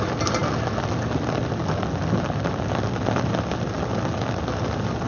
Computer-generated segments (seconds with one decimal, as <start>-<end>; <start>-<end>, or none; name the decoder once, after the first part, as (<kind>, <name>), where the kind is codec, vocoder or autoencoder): none